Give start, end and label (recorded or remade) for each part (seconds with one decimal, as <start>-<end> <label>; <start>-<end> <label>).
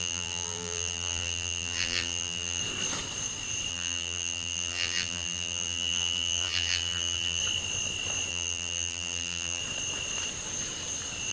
0.0-2.6 remade; 2.6-3.7 recorded; 3.7-7.4 remade; 7.4-8.3 recorded; 8.3-9.6 remade; 9.6-11.3 recorded